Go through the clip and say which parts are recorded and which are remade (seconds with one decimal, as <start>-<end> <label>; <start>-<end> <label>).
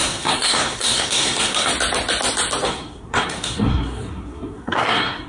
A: 0.0-1.7 remade; 1.7-2.7 recorded; 2.7-5.3 remade